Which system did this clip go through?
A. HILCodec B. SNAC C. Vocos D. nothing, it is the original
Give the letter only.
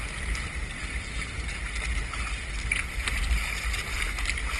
D